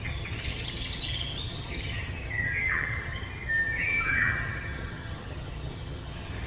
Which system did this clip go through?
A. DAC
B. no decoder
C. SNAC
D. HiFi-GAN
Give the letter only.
D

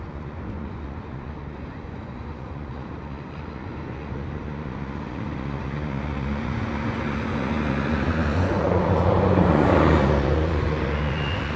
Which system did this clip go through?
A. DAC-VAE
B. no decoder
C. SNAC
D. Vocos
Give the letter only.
D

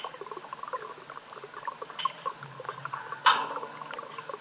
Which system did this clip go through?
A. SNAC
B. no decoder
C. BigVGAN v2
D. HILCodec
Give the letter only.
B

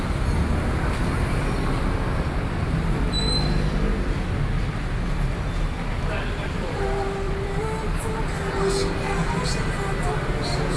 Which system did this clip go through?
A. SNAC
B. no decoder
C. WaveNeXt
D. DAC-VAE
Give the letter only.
B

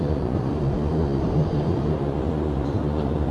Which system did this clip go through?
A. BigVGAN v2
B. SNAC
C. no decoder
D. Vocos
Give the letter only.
D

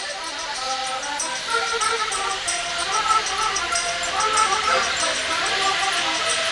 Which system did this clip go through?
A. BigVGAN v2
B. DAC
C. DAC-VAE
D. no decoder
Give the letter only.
D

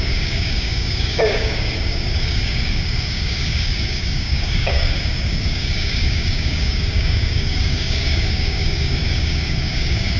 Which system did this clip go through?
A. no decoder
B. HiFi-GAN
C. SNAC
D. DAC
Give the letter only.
D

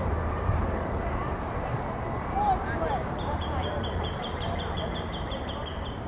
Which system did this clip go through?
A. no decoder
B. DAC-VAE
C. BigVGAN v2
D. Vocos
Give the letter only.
C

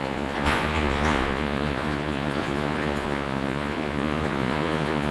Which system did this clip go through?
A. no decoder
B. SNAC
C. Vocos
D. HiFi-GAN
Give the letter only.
C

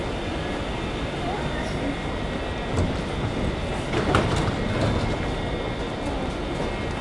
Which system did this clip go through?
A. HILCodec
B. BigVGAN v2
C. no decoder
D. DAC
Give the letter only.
C